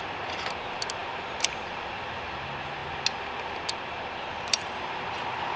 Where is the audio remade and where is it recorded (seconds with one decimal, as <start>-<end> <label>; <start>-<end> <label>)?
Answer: 0.0-5.6 recorded